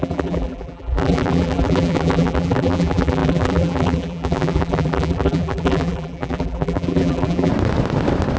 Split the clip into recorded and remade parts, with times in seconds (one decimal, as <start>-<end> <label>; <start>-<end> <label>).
0.0-7.5 remade; 7.5-8.4 recorded